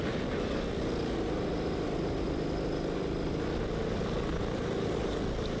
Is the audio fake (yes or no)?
no